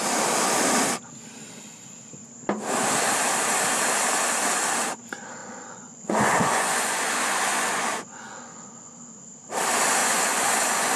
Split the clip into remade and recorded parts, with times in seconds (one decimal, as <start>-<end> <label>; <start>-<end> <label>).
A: 0.0-5.4 recorded; 5.4-8.9 remade; 8.9-10.0 recorded; 10.0-11.0 remade